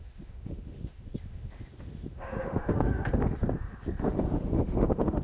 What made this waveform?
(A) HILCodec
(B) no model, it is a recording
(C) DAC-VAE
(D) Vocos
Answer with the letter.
C